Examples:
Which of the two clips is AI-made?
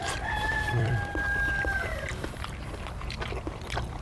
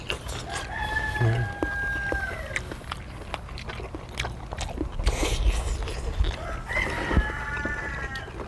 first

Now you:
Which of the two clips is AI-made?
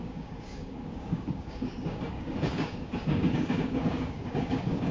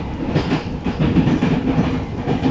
first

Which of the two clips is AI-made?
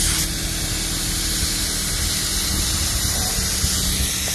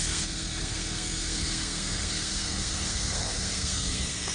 second